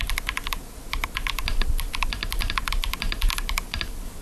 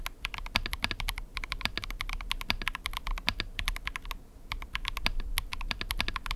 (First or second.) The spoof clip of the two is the first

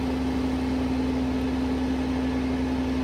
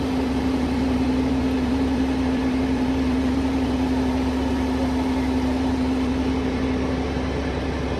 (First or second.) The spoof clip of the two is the second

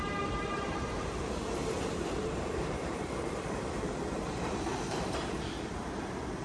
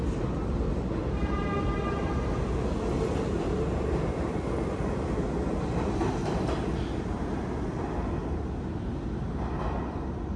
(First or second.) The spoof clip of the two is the first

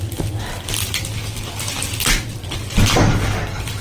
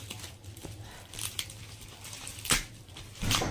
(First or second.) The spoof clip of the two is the second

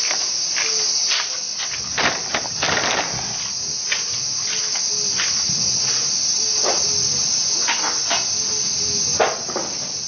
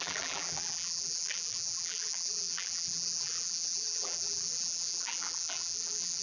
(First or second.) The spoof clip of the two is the second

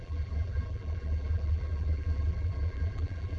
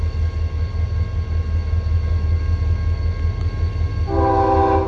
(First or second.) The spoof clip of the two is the first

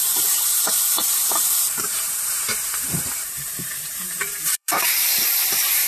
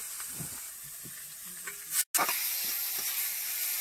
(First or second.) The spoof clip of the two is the first